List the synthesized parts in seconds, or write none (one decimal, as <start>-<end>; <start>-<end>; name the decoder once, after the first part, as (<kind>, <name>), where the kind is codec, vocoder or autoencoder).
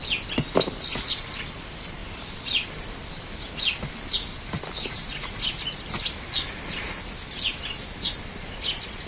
2.0-3.0 (vocoder, BigVGAN v2)